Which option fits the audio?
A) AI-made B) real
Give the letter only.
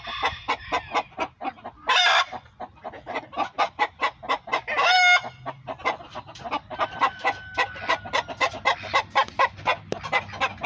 B